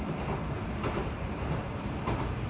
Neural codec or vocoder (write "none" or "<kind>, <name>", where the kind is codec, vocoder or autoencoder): none